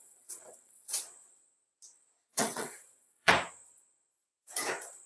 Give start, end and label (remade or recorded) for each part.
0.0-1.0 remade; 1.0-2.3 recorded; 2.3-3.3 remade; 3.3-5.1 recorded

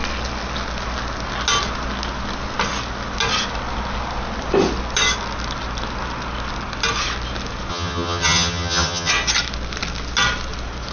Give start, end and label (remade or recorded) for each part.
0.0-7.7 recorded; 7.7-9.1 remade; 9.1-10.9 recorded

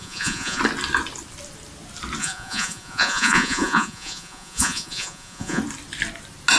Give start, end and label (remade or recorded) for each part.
0.0-0.6 remade; 0.6-2.2 recorded; 2.2-5.6 remade; 5.6-6.6 recorded

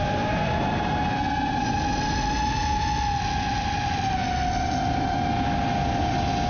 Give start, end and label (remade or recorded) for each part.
0.0-6.5 recorded

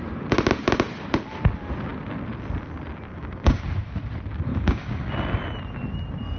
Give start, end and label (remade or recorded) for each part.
0.0-3.1 recorded; 3.1-3.6 remade; 3.6-4.5 recorded; 4.5-5.1 remade; 5.1-6.4 recorded